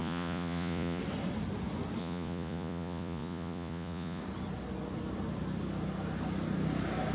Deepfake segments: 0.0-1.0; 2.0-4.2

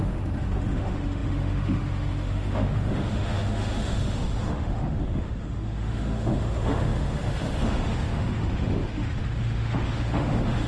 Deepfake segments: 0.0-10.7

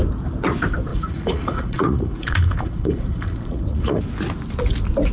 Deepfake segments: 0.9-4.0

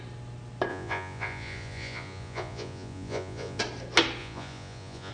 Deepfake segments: 0.7-3.6; 4.2-5.1